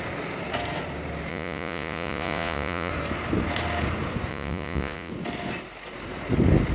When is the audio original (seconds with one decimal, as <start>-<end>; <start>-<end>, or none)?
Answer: 0.0-1.3; 2.9-4.3; 5.1-6.7